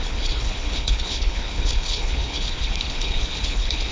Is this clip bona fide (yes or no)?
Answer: no